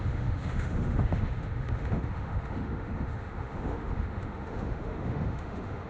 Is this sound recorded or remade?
remade